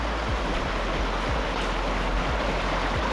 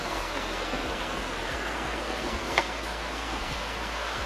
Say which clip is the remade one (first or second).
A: second